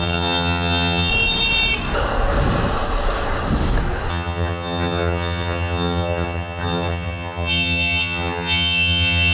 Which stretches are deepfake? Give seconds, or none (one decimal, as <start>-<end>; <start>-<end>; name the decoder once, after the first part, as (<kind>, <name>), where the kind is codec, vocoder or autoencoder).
0.0-1.1 (vocoder, HiFi-GAN); 4.1-9.3